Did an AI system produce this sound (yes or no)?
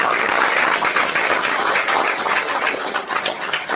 yes